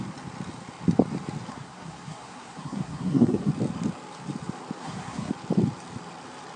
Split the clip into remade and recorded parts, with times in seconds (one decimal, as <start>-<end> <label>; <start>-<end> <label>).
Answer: 0.0-1.5 recorded; 1.5-3.5 remade; 3.5-4.8 recorded; 4.8-5.3 remade; 5.3-6.6 recorded